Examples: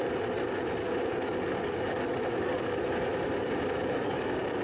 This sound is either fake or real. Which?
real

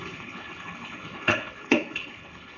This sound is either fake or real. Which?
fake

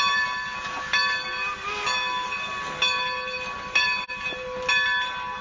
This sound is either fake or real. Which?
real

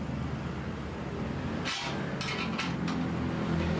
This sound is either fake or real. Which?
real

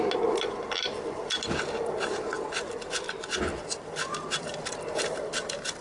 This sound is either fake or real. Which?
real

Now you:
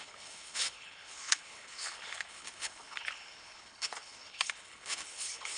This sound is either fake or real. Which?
fake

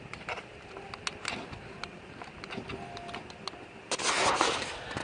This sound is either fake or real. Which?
real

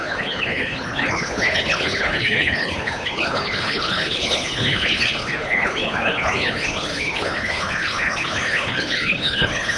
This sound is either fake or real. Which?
fake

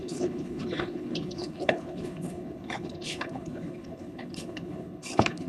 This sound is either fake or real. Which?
fake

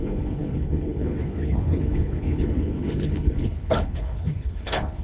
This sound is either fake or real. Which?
fake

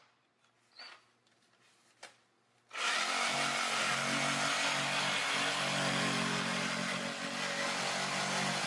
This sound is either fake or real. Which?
real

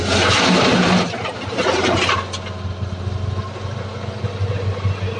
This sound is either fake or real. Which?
real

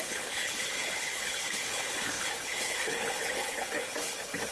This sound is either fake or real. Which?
fake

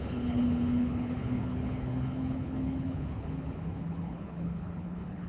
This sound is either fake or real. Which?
fake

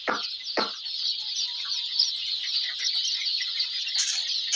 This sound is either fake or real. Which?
real